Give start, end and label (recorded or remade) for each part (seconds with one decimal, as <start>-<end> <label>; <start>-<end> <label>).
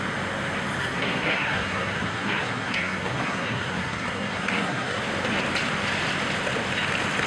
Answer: 0.0-0.8 recorded; 0.8-5.0 remade; 5.0-7.3 recorded